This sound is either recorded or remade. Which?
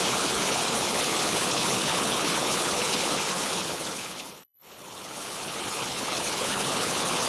remade